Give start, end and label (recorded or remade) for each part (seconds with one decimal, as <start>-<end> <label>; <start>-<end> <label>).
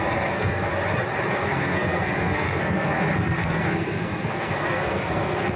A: 0.0-0.7 remade; 0.7-1.3 recorded; 1.3-5.6 remade